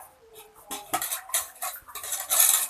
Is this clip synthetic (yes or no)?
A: yes